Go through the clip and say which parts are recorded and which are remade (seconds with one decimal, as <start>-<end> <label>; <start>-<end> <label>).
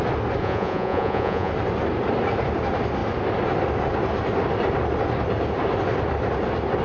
0.0-0.4 recorded; 0.4-1.5 remade; 1.5-6.8 recorded